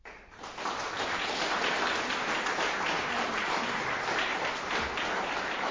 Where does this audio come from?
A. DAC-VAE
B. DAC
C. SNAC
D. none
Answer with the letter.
D